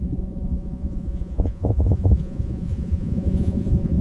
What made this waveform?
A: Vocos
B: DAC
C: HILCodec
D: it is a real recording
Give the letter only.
A